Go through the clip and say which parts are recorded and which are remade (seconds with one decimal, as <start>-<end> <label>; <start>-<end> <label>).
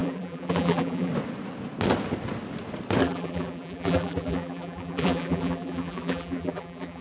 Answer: 0.0-1.1 remade; 1.1-3.0 recorded; 3.0-7.0 remade